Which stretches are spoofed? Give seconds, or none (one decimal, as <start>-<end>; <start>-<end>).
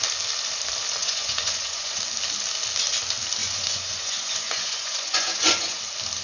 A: 1.0-2.0; 3.4-5.8